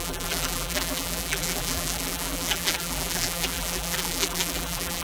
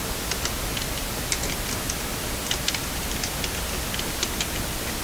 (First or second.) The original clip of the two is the second